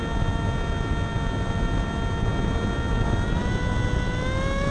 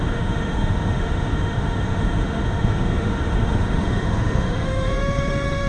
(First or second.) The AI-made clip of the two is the second